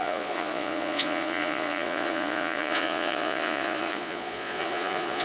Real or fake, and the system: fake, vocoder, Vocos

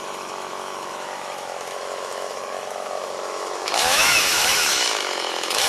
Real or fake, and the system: fake, autoencoder, DAC-VAE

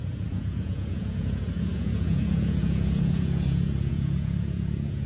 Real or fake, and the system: fake, vocoder, Vocos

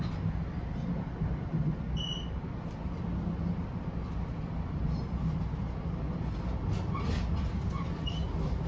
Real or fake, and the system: real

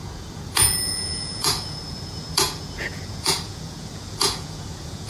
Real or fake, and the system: fake, vocoder, Vocos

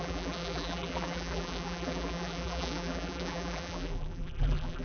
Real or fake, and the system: fake, vocoder, BigVGAN v2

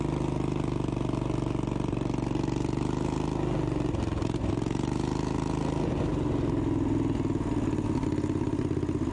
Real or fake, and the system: real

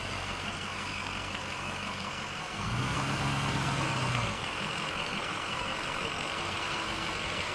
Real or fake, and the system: fake, codec, SNAC